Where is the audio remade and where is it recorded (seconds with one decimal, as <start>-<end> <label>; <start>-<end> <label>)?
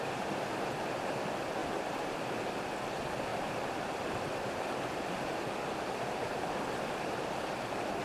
0.0-1.6 recorded; 1.6-2.5 remade; 2.5-3.3 recorded; 3.3-6.9 remade; 6.9-8.0 recorded